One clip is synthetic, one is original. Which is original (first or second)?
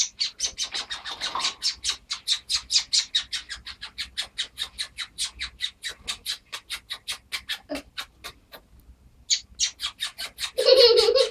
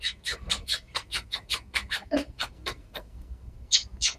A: first